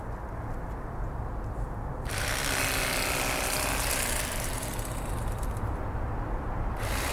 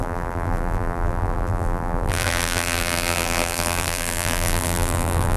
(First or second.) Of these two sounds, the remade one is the second